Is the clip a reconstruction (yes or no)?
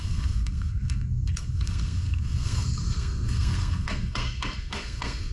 yes